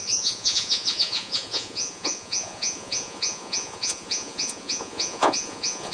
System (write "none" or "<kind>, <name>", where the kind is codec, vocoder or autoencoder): vocoder, Vocos